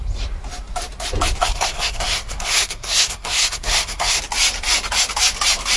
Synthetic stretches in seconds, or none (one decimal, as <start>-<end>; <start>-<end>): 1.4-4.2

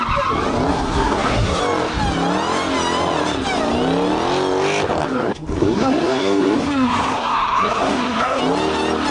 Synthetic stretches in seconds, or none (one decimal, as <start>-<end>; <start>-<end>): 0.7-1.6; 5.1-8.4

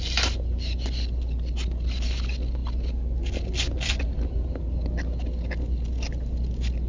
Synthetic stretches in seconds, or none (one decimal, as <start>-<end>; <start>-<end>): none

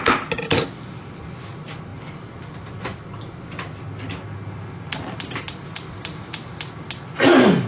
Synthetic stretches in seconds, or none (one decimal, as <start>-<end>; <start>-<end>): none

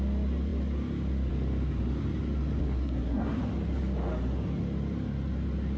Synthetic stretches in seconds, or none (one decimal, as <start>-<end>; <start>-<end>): 2.6-3.4

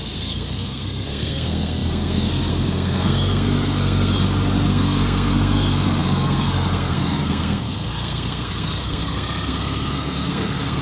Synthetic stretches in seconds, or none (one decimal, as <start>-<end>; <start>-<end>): 0.0-4.1; 4.7-10.8

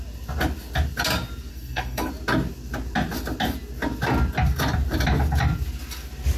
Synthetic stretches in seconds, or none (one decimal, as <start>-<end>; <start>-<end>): 1.5-2.1